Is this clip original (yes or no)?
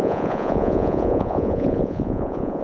no